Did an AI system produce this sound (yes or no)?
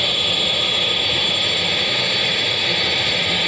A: no